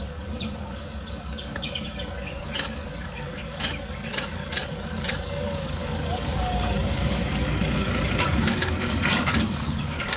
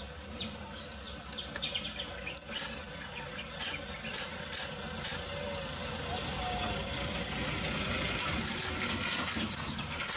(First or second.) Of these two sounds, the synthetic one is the first